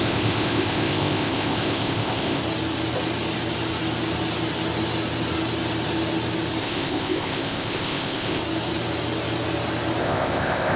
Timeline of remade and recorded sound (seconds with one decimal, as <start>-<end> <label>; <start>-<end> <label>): 0.0-2.4 remade; 2.4-6.6 recorded; 6.6-8.4 remade; 8.4-10.0 recorded; 10.0-10.8 remade